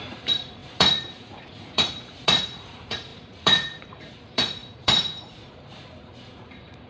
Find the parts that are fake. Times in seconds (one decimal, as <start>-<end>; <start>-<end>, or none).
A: 0.0-6.9